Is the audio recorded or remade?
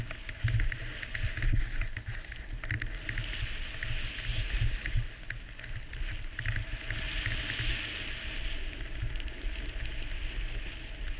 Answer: recorded